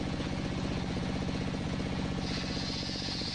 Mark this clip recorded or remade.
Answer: remade